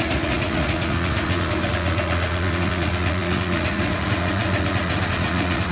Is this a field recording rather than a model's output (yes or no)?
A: no